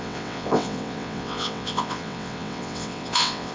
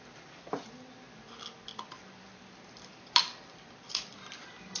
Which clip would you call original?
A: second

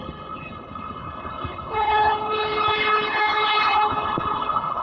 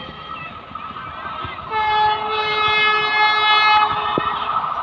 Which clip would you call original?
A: second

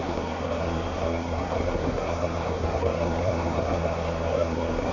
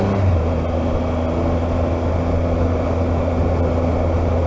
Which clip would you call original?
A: second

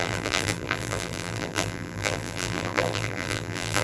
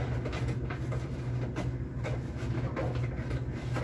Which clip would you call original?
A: second